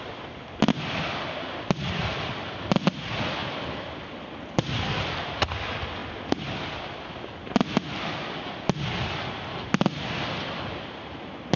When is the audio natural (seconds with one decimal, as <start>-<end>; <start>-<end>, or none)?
0.0-11.6